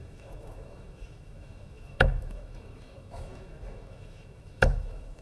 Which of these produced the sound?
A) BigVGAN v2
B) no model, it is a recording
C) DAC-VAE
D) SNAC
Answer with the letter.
C